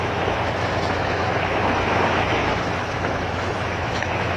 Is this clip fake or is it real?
fake